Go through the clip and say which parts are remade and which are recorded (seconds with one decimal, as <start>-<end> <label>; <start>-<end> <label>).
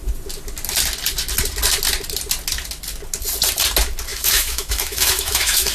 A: 0.0-4.1 recorded; 4.1-5.7 remade